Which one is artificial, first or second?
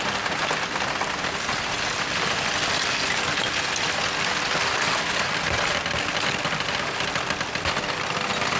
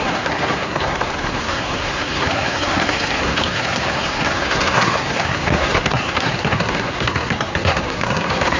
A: second